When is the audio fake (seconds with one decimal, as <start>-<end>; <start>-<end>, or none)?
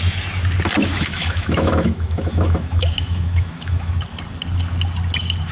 0.9-3.9